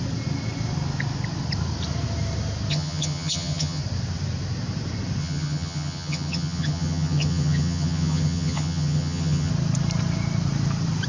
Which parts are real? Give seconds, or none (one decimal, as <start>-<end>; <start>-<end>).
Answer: 0.0-2.7; 3.8-5.2; 9.5-11.1